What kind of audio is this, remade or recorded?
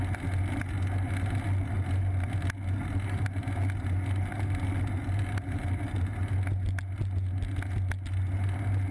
recorded